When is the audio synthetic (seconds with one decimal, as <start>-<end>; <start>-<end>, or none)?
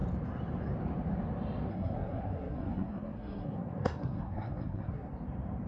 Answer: 1.7-5.1